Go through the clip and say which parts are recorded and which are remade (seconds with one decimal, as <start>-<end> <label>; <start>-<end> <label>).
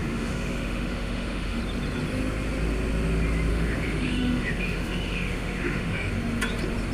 0.0-1.6 remade; 1.6-3.5 recorded; 3.5-6.1 remade; 6.1-6.9 recorded